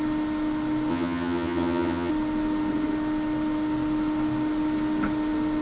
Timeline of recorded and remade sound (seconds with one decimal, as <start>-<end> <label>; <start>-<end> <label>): 0.0-0.9 recorded; 0.9-2.1 remade; 2.1-5.6 recorded